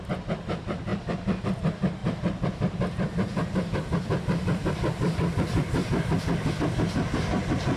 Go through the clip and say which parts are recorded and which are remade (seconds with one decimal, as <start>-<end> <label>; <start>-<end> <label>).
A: 0.0-0.9 recorded; 0.9-1.4 remade; 1.4-2.0 recorded; 2.0-6.5 remade; 6.5-7.8 recorded